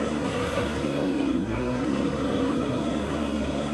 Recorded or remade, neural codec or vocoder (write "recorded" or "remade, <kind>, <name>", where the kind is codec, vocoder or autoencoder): remade, codec, SNAC